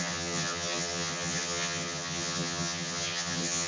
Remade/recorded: remade